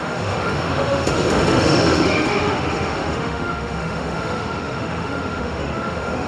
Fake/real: fake